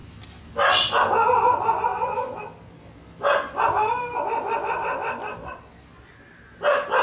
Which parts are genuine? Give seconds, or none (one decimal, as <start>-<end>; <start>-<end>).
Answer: 0.0-7.0